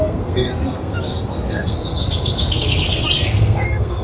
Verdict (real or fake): fake